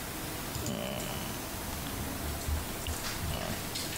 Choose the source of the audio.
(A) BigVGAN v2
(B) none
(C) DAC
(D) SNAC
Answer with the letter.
B